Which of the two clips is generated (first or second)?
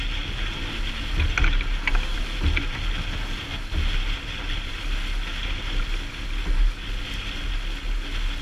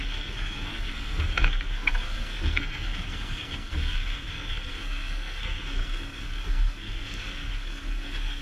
second